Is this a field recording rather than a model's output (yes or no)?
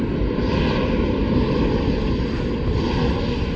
yes